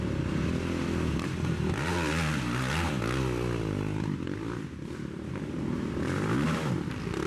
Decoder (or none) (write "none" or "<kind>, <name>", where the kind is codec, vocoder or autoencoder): none